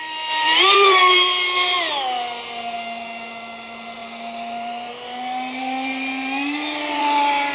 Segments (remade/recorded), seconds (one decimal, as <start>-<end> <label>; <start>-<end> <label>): 0.0-7.5 remade